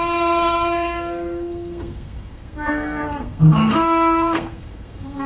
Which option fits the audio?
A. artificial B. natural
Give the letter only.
A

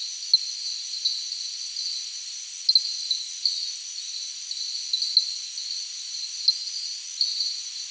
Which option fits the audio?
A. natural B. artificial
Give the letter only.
A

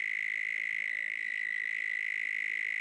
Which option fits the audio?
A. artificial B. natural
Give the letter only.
B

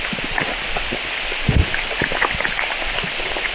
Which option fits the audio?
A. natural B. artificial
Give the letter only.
A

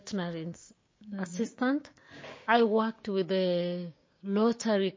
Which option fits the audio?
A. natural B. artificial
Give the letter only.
B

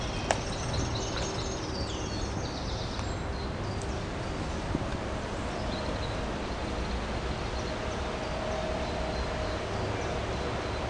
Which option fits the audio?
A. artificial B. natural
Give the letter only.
B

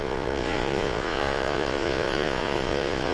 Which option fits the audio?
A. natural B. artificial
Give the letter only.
B